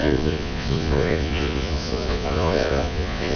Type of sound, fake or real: fake